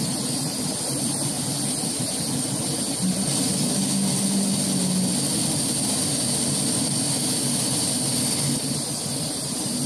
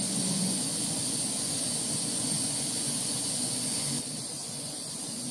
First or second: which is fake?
second